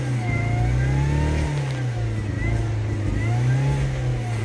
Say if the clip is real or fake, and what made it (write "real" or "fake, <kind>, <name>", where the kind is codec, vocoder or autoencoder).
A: real